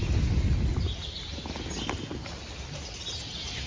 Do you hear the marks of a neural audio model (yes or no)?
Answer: no